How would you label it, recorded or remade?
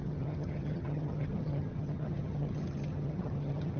remade